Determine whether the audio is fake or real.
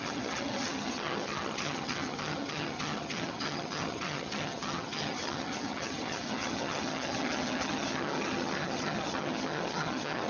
fake